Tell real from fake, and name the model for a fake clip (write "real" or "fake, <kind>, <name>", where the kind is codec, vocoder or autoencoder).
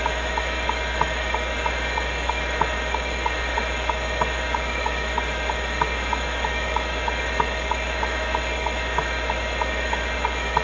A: fake, autoencoder, DAC-VAE